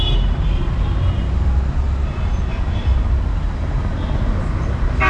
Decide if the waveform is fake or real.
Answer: real